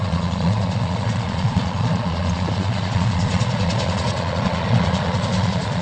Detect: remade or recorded remade